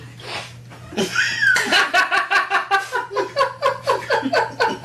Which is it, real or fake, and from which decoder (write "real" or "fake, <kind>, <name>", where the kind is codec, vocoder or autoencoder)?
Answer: real